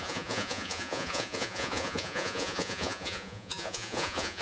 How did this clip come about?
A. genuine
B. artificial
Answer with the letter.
B